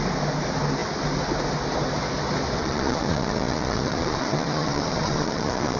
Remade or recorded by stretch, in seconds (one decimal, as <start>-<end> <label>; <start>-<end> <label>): 0.0-2.6 recorded; 2.6-5.8 remade